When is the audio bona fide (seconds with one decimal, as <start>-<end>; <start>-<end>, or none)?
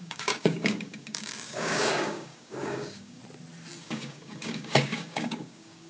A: 3.2-3.8